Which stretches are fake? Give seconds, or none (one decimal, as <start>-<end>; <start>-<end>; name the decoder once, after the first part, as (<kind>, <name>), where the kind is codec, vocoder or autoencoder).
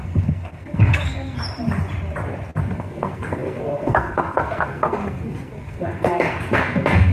0.0-1.4 (codec, SNAC); 2.6-7.1